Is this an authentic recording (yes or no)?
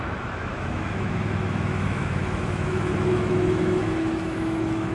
no